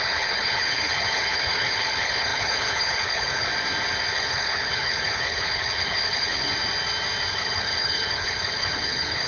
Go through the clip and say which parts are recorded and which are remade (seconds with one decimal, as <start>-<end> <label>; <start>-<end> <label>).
0.0-3.5 remade; 3.5-4.1 recorded; 4.1-6.5 remade; 6.5-7.3 recorded; 7.3-9.3 remade